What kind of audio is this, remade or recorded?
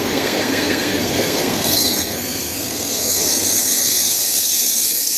remade